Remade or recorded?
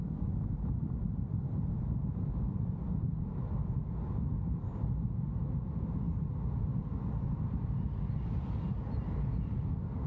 recorded